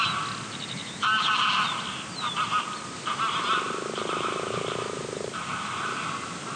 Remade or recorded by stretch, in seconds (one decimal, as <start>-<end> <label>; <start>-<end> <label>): 0.0-1.9 recorded; 1.9-5.9 remade; 5.9-6.6 recorded